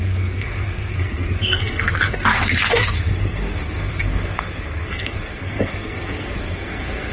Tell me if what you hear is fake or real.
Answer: fake